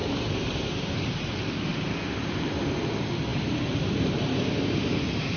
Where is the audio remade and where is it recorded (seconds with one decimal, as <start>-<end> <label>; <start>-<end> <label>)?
0.0-1.2 remade; 1.2-3.3 recorded; 3.3-5.4 remade